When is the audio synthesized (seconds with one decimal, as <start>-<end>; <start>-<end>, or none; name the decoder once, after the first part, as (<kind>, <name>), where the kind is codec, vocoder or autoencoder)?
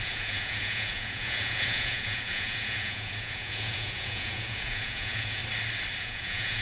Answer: 0.0-5.4 (vocoder, Vocos); 6.0-6.6